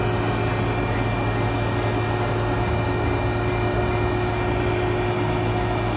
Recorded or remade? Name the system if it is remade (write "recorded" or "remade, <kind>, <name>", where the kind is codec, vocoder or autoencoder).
recorded